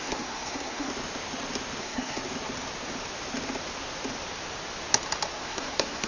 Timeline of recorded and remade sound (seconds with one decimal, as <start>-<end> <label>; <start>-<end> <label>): 0.0-0.9 remade; 0.9-1.8 recorded; 1.8-2.2 remade; 2.2-5.3 recorded; 5.3-6.1 remade